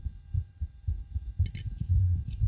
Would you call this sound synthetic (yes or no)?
no